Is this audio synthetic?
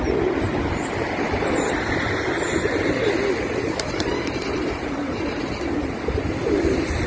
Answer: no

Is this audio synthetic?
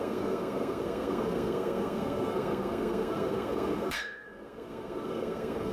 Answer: yes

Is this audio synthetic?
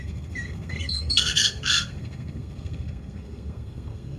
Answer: yes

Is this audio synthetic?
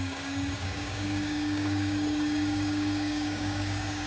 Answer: yes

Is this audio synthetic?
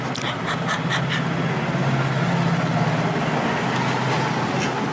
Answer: no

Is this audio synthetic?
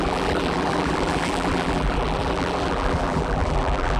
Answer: yes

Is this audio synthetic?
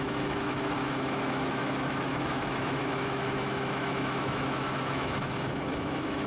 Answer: yes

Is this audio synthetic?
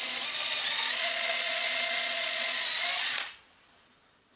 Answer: yes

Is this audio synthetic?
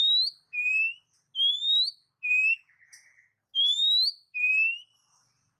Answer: no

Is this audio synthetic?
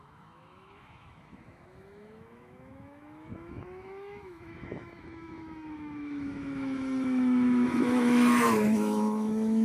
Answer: yes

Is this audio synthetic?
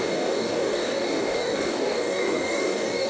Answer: yes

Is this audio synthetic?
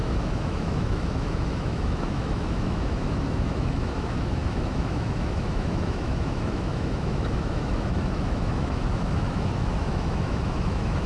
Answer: yes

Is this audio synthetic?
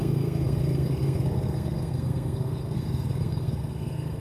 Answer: yes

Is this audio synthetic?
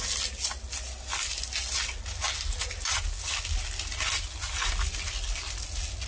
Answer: no